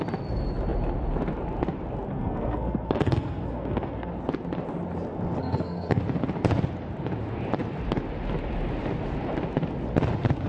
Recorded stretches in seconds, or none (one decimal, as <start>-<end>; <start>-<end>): 0.0-2.1; 4.1-5.4; 6.0-10.5